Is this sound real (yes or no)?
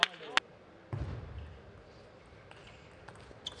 yes